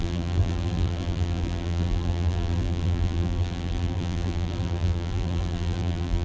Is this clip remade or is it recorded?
remade